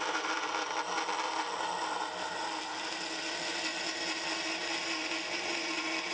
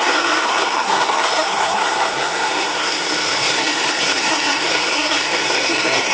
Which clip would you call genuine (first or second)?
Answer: first